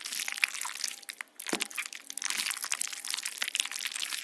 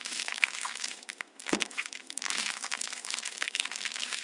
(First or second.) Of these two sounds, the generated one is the second